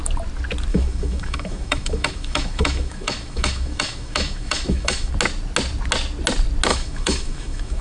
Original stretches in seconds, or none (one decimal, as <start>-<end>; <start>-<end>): 0.0-0.7; 5.1-6.7